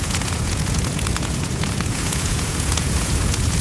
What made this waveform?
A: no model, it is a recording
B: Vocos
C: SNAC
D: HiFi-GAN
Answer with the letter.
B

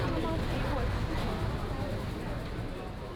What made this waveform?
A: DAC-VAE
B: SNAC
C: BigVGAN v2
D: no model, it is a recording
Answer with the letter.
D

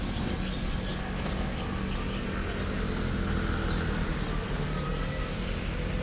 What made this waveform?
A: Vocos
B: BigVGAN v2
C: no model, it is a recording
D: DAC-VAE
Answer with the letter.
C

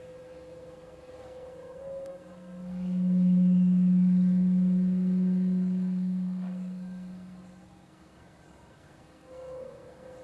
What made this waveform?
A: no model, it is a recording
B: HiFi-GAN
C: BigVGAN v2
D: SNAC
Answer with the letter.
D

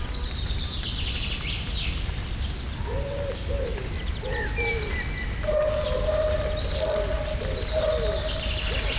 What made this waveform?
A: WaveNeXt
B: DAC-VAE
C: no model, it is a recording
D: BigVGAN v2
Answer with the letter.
C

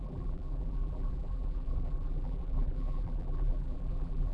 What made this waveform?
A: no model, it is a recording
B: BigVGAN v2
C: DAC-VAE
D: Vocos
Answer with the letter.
B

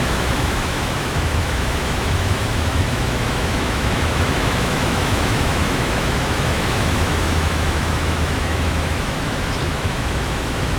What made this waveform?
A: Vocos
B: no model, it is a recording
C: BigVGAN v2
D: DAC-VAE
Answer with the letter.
D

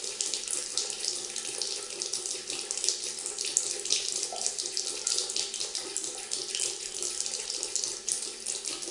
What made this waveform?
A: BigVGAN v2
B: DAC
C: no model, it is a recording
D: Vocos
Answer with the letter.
C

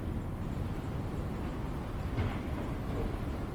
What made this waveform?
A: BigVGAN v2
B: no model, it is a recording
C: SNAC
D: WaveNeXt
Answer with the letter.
B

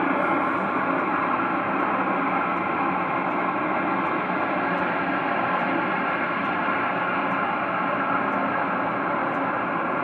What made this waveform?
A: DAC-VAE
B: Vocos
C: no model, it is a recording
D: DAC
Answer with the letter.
C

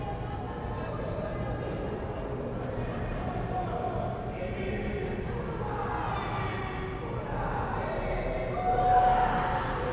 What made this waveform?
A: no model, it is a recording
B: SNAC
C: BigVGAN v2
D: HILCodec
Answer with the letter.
A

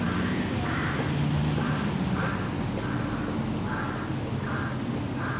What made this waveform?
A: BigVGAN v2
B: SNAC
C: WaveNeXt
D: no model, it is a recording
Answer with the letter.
D